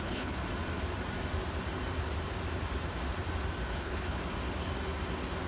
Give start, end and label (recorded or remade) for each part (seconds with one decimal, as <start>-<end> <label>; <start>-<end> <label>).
0.0-0.4 remade; 0.4-3.7 recorded; 3.7-4.2 remade; 4.2-5.5 recorded